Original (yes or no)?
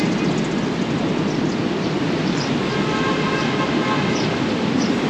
yes